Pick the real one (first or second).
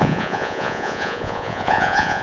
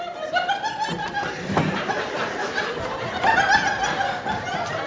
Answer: second